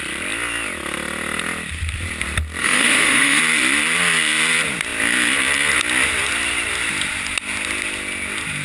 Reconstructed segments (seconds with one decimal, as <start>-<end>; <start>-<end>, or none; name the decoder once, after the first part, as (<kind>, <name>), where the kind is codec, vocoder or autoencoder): 2.6-3.4 (autoencoder, DAC-VAE)